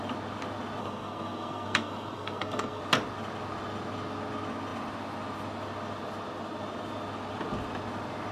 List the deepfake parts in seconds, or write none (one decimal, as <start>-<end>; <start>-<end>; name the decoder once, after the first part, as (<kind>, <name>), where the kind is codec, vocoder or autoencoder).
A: 0.8-2.8 (codec, SNAC)